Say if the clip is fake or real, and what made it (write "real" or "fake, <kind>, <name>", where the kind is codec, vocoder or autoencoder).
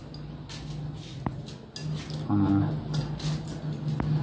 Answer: real